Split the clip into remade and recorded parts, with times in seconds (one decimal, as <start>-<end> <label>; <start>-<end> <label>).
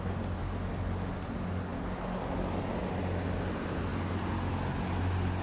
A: 0.0-5.4 recorded